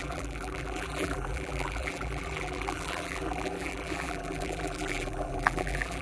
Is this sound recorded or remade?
remade